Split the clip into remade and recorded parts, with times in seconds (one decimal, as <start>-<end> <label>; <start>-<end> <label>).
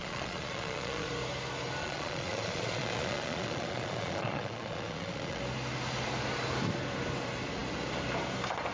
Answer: 0.0-1.1 remade; 1.1-1.8 recorded; 1.8-5.4 remade; 5.4-8.7 recorded